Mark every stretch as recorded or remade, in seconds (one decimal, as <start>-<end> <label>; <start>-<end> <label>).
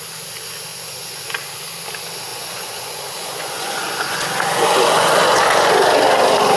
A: 0.0-0.7 recorded; 0.7-1.2 remade; 1.2-2.3 recorded; 2.3-5.7 remade; 5.7-6.6 recorded